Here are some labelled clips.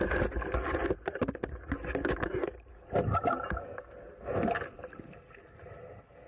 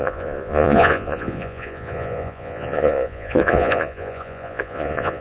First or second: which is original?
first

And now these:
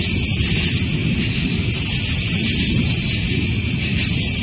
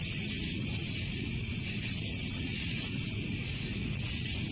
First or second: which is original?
first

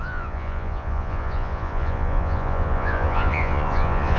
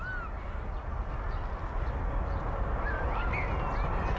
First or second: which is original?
second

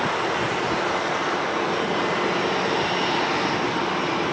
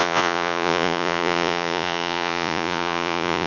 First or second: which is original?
first